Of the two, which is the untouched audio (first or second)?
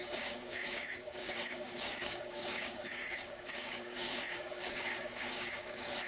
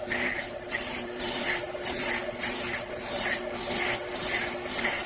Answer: second